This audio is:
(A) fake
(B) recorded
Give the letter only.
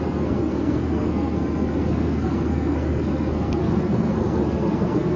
A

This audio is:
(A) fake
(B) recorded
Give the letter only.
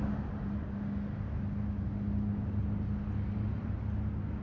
B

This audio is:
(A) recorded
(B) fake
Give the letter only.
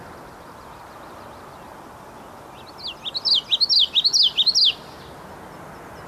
A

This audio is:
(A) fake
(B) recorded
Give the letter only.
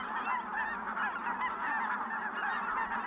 B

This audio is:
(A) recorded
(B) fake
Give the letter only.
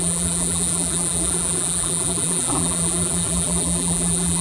B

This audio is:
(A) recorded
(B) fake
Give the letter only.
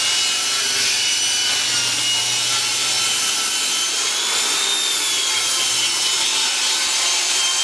A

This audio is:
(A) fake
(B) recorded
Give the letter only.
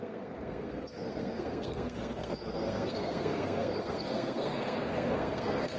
A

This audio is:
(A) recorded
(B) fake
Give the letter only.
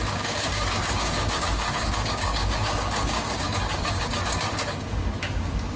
B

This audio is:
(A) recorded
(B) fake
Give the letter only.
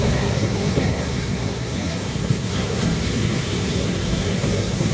B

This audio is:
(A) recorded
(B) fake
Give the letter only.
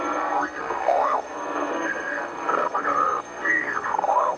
B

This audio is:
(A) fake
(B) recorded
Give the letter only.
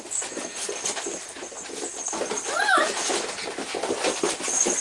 B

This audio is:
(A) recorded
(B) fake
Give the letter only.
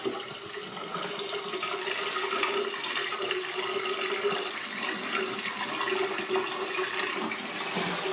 A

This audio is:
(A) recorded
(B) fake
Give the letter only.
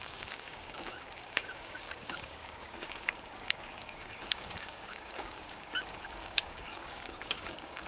B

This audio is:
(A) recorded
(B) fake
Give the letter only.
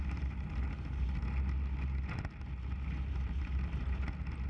A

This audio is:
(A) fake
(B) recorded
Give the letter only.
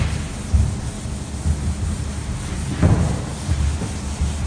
B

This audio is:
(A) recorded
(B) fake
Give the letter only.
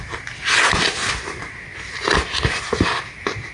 A